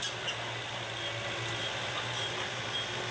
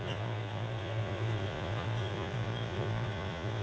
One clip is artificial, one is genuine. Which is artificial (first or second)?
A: second